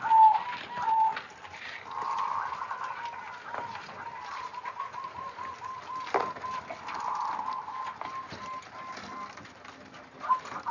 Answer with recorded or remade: recorded